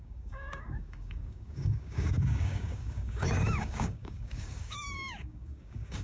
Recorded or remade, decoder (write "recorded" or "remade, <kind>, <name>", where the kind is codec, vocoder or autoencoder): remade, codec, DAC